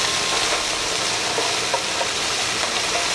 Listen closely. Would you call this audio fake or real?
real